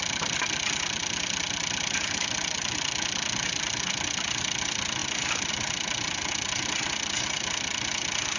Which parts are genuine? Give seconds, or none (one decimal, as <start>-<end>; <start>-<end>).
0.0-8.4